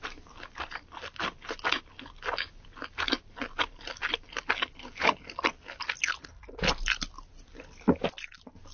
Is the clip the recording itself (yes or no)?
yes